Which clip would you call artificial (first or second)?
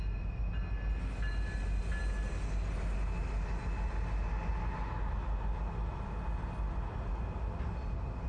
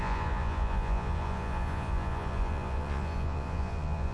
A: second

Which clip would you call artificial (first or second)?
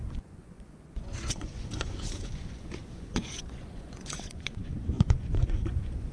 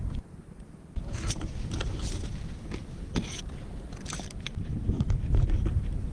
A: first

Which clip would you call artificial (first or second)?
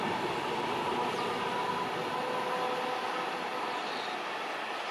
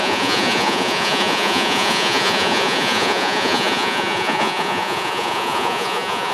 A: second